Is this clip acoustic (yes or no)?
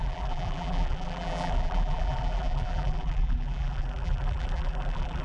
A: no